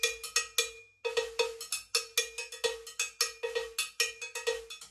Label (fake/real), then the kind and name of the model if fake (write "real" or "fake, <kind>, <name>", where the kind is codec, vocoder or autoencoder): real